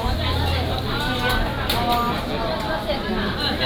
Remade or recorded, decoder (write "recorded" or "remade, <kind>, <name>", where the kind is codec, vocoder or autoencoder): recorded